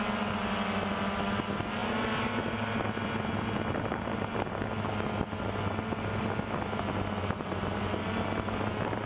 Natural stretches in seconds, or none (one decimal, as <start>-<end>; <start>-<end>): 0.0-9.1